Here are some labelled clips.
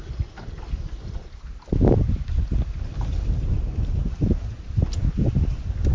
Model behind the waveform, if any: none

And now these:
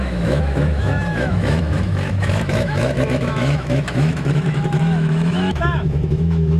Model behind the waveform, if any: autoencoder, DAC-VAE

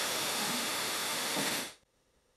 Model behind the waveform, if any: autoencoder, DAC-VAE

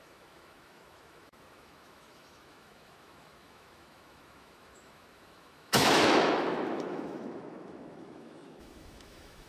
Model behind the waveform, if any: autoencoder, DAC-VAE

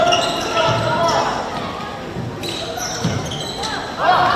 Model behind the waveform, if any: none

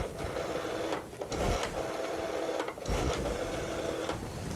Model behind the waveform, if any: none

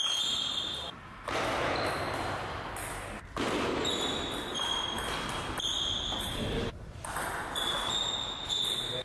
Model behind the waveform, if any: none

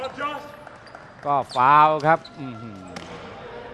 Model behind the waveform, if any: none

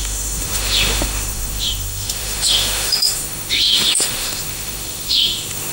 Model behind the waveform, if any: autoencoder, DAC-VAE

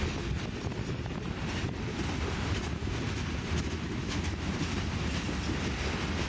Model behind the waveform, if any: none